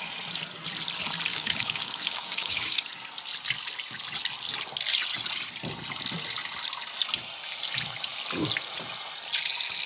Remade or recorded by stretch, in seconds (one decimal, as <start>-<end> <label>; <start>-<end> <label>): 0.0-1.3 recorded; 1.3-2.8 remade; 2.8-9.9 recorded